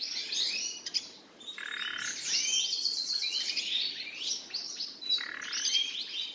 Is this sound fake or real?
real